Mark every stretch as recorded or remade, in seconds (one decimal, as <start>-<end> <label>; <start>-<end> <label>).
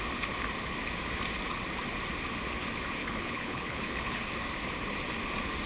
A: 0.0-3.0 recorded; 3.0-4.2 remade; 4.2-5.7 recorded